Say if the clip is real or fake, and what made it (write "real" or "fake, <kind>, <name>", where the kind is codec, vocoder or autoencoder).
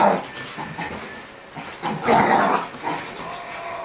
real